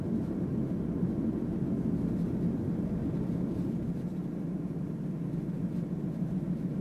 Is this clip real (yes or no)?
yes